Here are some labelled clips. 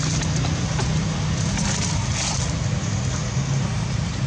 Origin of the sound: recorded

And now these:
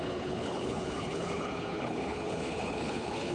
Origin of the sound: remade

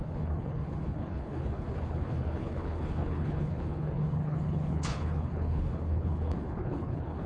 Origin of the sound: remade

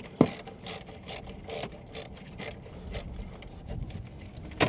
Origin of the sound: recorded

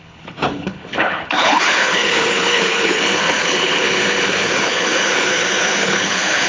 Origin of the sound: remade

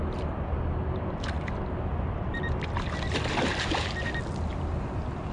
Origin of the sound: recorded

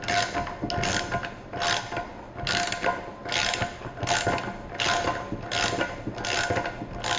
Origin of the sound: recorded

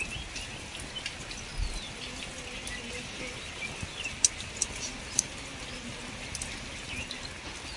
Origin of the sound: recorded